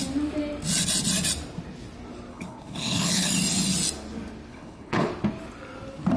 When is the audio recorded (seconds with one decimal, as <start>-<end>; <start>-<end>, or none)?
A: 0.0-2.3; 3.3-4.5; 5.1-6.2